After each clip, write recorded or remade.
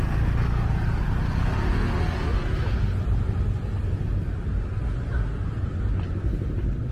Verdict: recorded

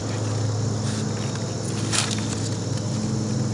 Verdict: recorded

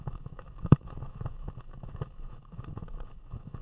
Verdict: remade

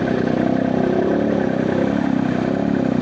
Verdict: recorded